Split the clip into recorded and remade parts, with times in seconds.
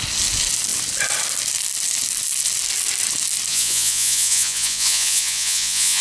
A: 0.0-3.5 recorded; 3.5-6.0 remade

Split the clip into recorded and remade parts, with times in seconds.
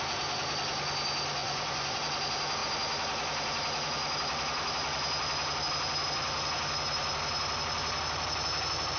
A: 0.0-1.4 recorded; 1.4-2.0 remade; 2.0-9.0 recorded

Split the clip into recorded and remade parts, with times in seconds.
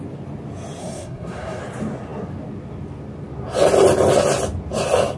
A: 0.0-0.8 recorded; 0.8-1.6 remade; 1.6-5.2 recorded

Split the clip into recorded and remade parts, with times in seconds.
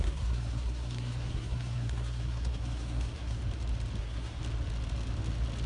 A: 0.0-3.4 remade; 3.4-4.0 recorded; 4.0-4.4 remade; 4.4-5.7 recorded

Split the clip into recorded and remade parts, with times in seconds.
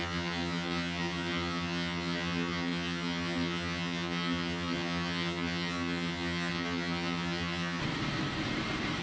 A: 0.0-7.8 remade; 7.8-9.0 recorded